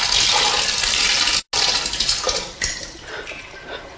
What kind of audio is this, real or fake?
real